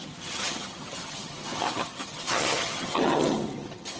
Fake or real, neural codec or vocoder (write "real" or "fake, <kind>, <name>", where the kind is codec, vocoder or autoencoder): fake, vocoder, HiFi-GAN